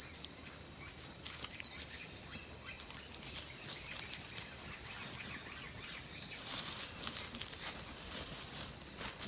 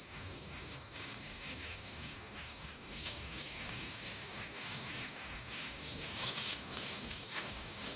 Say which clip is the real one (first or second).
first